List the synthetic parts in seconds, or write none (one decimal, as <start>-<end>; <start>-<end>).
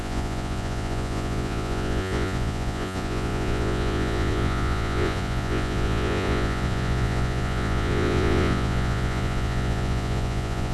0.0-10.7